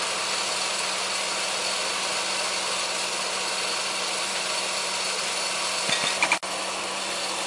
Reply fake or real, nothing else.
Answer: real